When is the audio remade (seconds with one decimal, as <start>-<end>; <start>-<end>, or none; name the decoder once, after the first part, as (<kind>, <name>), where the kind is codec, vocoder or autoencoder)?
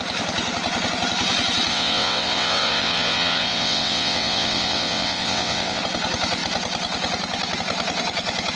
1.7-5.8 (vocoder, WaveNeXt)